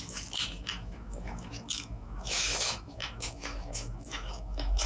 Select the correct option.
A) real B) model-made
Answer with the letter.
B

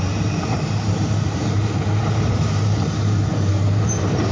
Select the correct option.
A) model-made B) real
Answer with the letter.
A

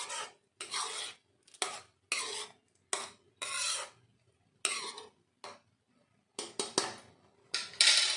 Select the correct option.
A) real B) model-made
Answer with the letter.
A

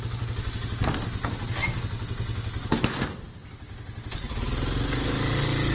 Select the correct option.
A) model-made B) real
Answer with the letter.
B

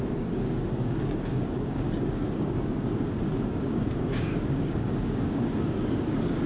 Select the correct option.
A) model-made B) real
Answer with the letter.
A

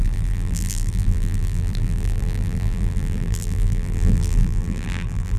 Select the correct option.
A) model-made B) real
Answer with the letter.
A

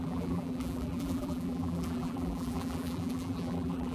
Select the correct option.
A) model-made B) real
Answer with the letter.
A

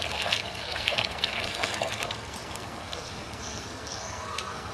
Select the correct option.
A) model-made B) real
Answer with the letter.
A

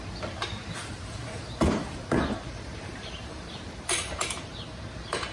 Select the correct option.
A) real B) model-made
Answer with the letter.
B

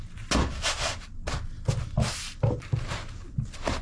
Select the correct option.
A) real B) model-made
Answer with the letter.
A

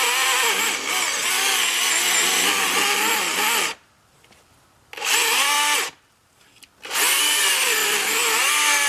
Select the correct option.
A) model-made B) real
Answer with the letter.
B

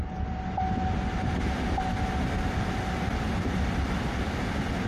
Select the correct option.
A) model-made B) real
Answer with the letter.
B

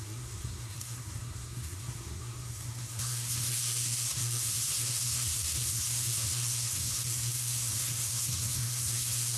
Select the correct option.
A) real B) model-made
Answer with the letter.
B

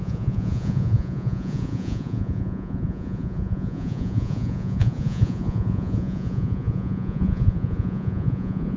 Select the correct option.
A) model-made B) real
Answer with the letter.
A